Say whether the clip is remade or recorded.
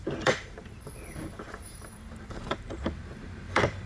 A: remade